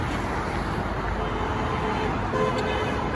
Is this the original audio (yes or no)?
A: yes